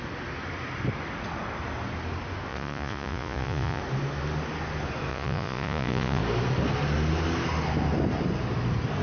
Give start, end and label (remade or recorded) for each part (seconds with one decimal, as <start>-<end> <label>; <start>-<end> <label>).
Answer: 0.0-2.5 recorded; 2.5-3.8 remade; 3.8-5.1 recorded; 5.1-6.2 remade; 6.2-9.0 recorded